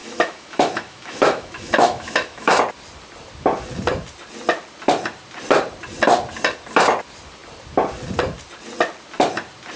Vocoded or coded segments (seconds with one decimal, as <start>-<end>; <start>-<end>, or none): 0.0-2.6